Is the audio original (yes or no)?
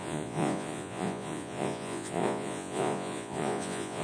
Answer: no